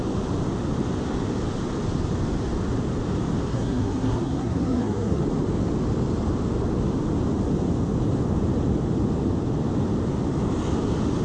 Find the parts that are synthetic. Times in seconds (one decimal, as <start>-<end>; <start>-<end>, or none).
3.5-5.2